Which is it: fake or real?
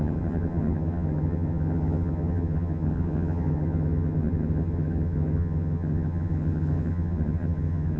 fake